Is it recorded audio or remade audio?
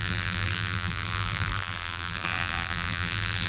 remade